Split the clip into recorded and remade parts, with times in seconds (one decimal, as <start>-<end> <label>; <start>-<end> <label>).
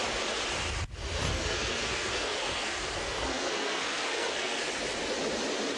0.0-1.2 recorded; 1.2-4.7 remade; 4.7-5.8 recorded